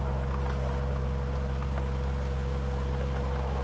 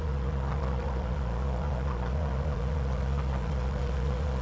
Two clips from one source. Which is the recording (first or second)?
first